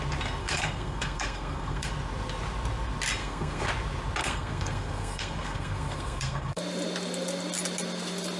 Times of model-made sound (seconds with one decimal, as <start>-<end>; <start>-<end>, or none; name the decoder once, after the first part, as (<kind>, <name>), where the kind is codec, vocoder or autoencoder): 0.4-1.9 (codec, SNAC); 3.2-3.7; 4.2-6.6